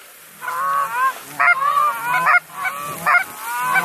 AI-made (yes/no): no